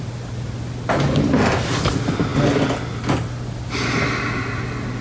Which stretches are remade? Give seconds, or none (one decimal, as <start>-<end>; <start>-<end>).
none